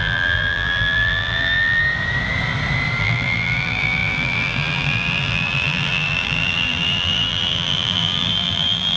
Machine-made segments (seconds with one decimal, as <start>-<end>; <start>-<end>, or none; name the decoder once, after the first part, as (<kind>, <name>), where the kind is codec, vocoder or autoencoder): 0.0-1.8 (vocoder, BigVGAN v2); 3.0-9.0